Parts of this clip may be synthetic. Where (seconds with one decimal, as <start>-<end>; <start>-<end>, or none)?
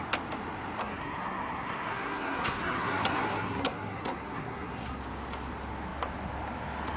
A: 0.8-5.0